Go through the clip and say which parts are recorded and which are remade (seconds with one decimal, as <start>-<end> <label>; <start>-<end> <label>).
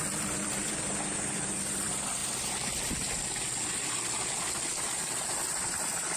0.0-2.2 remade; 2.2-3.6 recorded; 3.6-6.2 remade